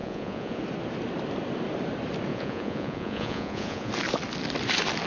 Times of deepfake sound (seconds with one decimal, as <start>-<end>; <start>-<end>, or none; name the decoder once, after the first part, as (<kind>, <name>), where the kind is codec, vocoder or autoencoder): 0.0-0.6 (vocoder, Vocos); 2.3-3.9